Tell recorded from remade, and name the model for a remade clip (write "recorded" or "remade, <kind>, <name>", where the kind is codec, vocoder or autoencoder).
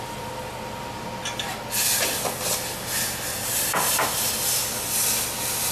recorded